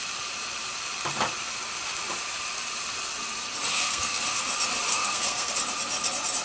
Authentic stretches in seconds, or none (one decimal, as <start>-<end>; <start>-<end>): 0.0-3.7; 4.2-4.9; 5.5-6.4